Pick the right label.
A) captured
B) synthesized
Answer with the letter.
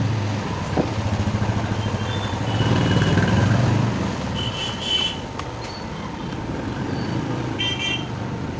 A